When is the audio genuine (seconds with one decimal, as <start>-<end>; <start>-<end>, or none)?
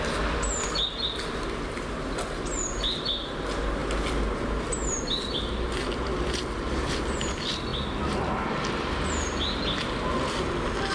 0.0-10.9